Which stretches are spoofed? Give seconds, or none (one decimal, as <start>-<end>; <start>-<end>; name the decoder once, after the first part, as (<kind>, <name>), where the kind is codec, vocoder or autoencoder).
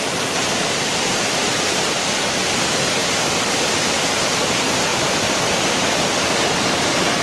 none